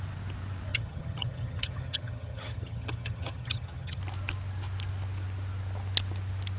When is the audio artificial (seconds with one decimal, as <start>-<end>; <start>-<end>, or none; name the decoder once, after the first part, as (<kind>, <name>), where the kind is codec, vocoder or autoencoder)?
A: 0.7-4.0 (vocoder, HiFi-GAN)